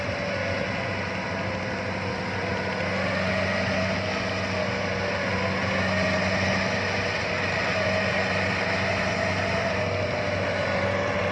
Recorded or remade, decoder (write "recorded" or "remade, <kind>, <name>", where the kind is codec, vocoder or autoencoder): recorded